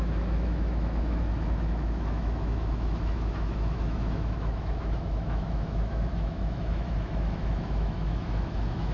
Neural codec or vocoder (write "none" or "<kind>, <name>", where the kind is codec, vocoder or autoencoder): autoencoder, DAC-VAE